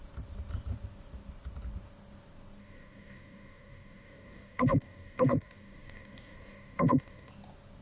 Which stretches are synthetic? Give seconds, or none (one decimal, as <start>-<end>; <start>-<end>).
2.6-7.3